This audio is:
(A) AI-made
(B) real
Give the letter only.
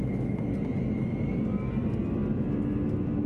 B